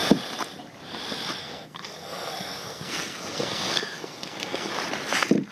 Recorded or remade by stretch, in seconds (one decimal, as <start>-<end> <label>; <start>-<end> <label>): 0.0-1.4 recorded; 1.4-4.7 remade; 4.7-5.5 recorded